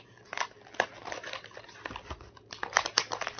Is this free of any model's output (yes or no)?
yes